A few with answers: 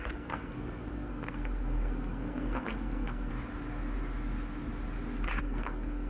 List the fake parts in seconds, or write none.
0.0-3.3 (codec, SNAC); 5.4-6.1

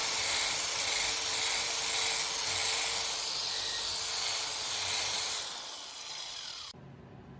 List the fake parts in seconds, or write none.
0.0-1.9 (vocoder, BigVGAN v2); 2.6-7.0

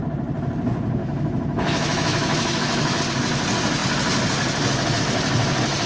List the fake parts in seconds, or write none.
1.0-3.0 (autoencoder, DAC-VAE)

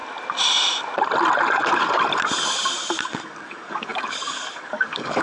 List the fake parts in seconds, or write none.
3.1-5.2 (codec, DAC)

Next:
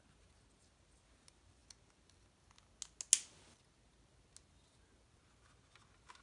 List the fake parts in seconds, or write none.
none

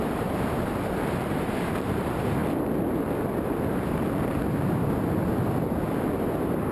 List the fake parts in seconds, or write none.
0.0-2.4 (vocoder, BigVGAN v2)